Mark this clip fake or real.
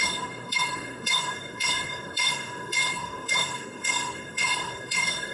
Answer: fake